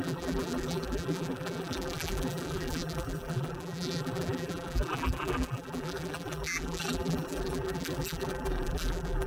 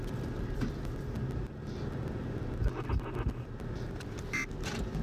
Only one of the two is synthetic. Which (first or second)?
first